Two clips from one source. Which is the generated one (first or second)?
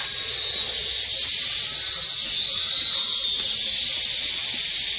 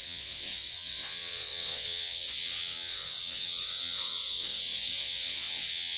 second